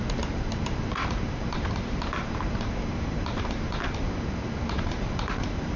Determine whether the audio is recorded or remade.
remade